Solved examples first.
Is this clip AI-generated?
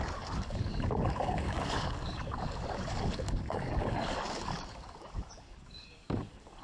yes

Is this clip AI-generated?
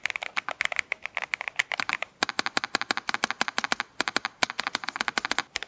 no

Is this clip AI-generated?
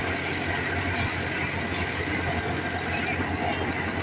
no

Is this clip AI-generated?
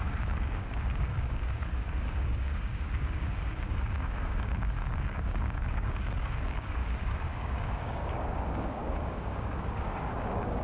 yes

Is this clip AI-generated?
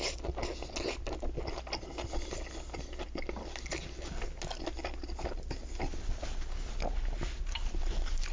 no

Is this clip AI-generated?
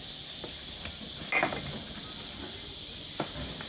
no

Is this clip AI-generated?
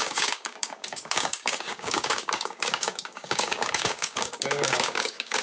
yes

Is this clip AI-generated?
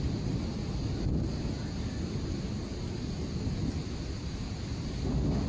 no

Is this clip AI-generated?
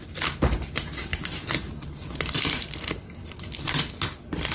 no